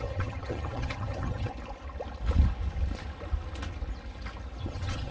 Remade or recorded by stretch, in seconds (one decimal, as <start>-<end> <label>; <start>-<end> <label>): 0.0-1.5 remade; 1.5-4.6 recorded; 4.6-5.1 remade